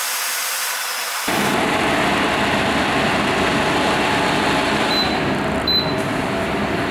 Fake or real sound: real